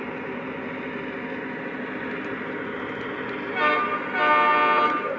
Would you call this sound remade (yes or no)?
no